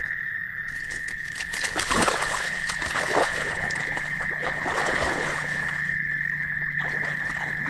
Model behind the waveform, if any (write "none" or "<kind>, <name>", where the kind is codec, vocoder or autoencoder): codec, HILCodec